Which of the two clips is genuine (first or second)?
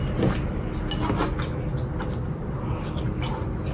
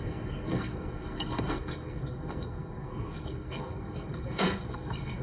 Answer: first